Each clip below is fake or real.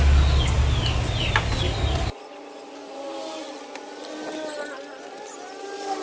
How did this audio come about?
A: real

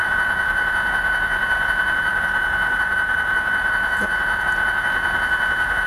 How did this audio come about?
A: fake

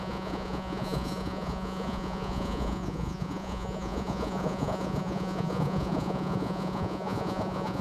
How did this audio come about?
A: fake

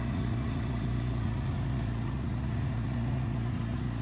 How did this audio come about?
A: fake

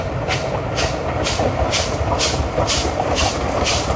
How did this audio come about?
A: real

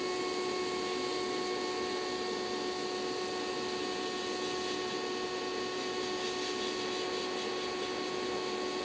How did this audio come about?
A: real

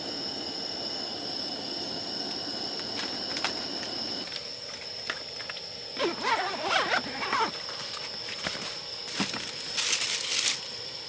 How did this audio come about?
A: real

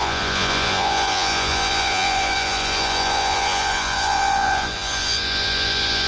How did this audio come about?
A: fake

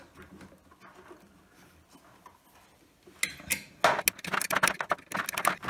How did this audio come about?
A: real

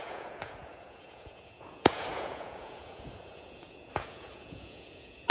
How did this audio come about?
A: fake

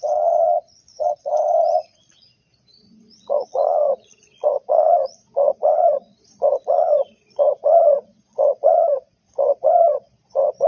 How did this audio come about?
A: fake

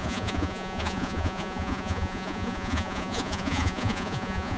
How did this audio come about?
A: fake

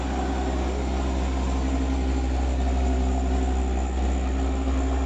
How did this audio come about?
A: real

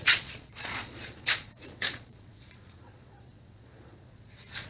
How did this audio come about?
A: fake